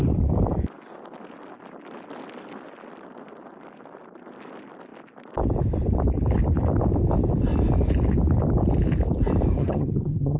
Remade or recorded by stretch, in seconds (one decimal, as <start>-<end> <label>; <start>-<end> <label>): 0.0-9.6 recorded; 9.6-10.4 remade